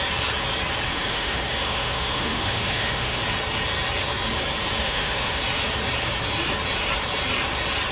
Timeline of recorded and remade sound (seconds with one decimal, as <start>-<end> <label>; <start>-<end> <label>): 0.0-0.9 recorded; 0.9-3.2 remade; 3.2-4.8 recorded; 4.8-5.4 remade; 5.4-7.9 recorded

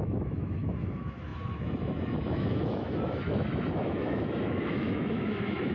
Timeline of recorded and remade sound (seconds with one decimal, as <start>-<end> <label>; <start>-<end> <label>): 0.0-5.7 remade

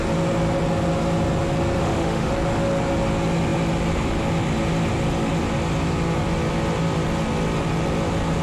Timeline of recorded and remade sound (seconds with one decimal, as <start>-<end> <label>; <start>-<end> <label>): 0.0-1.8 recorded; 1.8-2.3 remade; 2.3-8.4 recorded

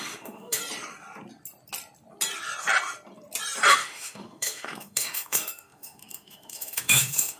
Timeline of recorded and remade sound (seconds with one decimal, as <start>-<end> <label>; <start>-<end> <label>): 0.0-0.6 remade; 0.6-3.7 recorded; 3.7-7.4 remade